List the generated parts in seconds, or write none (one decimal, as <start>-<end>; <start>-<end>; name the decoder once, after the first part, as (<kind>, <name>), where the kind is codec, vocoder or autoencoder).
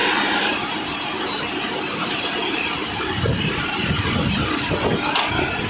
0.0-1.8 (vocoder, BigVGAN v2); 2.4-4.7